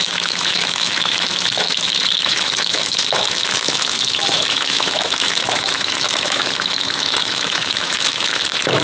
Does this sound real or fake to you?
fake